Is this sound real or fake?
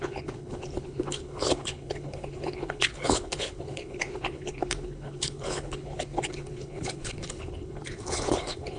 fake